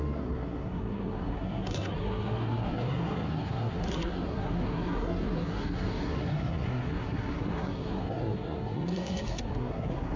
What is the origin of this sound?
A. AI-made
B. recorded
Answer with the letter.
A